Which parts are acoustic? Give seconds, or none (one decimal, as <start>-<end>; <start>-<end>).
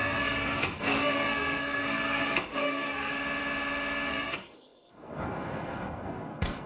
3.1-4.1